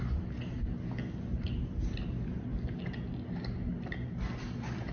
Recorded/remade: recorded